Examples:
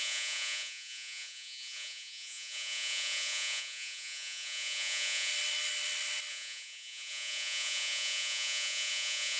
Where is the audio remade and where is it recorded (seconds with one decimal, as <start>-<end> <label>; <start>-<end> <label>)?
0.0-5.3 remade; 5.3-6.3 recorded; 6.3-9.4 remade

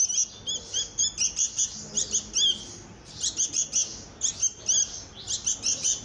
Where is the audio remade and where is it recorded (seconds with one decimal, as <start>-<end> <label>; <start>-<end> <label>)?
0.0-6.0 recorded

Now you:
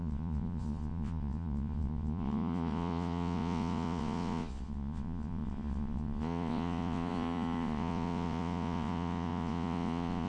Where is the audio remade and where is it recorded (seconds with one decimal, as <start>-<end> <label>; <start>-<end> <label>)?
0.0-10.3 remade

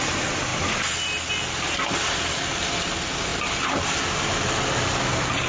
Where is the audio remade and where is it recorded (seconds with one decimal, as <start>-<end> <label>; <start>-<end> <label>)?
0.0-5.5 recorded

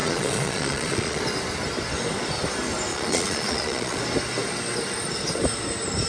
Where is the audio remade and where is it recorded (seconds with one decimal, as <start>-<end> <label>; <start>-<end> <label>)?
0.0-1.2 remade; 1.2-2.9 recorded; 2.9-4.0 remade; 4.0-6.1 recorded

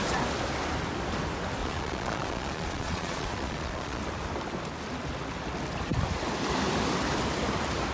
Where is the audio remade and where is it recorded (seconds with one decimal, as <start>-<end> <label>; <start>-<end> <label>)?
0.0-1.6 recorded; 1.6-4.0 remade; 4.0-7.9 recorded